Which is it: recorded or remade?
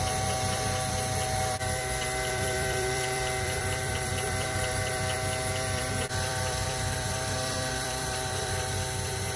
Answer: remade